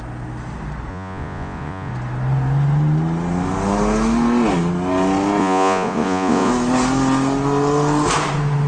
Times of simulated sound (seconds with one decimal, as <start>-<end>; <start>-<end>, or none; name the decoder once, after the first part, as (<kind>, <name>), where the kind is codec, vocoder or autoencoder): 0.9-1.9 (vocoder, Vocos); 5.4-6.5